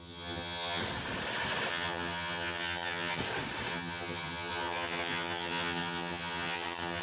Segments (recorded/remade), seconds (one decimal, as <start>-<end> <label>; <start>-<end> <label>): 0.0-0.8 remade; 0.8-1.7 recorded; 1.7-3.2 remade; 3.2-3.7 recorded; 3.7-7.0 remade